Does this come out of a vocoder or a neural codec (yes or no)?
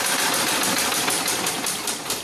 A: no